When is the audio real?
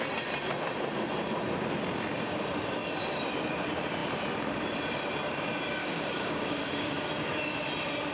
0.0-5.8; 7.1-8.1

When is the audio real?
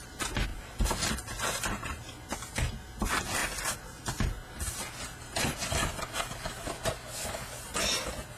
0.0-8.4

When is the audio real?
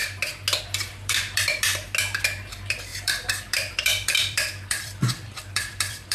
0.0-0.6; 1.7-2.5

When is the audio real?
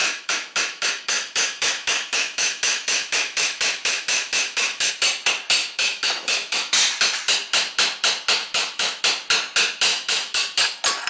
4.9-5.6; 6.7-8.4; 9.0-9.9; 10.4-11.1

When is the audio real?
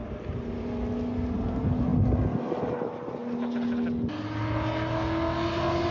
0.7-5.9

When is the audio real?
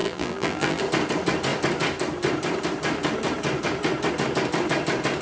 0.8-5.2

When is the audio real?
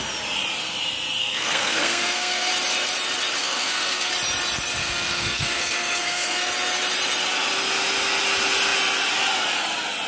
0.0-1.2; 2.5-3.4; 4.1-4.8; 6.5-10.1